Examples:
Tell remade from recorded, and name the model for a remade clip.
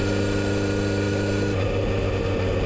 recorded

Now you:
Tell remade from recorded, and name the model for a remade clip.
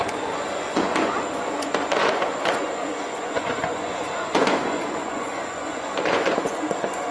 remade, vocoder, Vocos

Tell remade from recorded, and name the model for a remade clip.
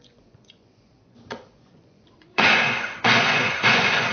remade, vocoder, Vocos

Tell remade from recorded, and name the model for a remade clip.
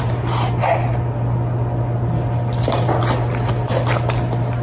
recorded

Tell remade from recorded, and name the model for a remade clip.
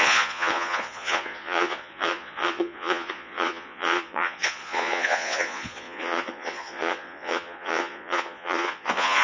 remade, vocoder, Vocos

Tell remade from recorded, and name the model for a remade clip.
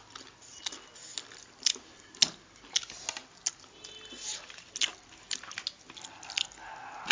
recorded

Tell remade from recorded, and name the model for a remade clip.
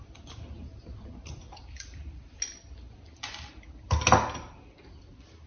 recorded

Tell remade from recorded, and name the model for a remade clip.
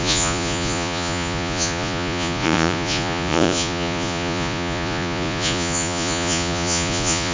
remade, vocoder, Vocos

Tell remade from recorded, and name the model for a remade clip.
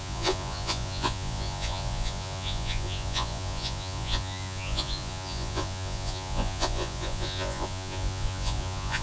remade, vocoder, Vocos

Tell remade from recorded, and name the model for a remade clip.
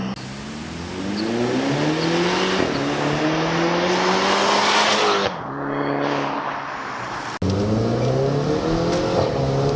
recorded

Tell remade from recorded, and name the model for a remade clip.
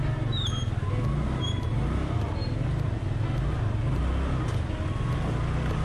recorded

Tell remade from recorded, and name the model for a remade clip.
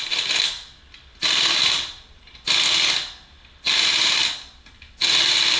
recorded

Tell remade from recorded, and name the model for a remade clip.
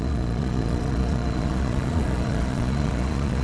remade, vocoder, Vocos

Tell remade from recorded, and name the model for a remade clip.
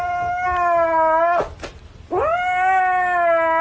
recorded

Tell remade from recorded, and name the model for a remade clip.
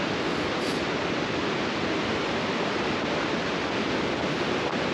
recorded